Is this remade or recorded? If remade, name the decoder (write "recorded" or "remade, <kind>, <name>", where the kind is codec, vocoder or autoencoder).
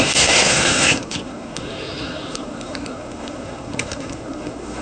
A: remade, codec, SNAC